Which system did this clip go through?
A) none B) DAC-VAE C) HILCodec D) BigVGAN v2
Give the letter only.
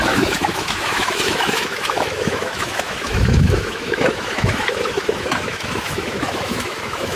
B